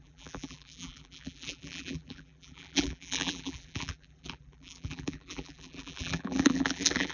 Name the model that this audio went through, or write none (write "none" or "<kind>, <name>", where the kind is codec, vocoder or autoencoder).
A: vocoder, BigVGAN v2